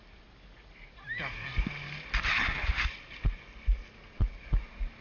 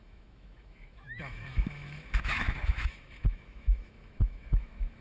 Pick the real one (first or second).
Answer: first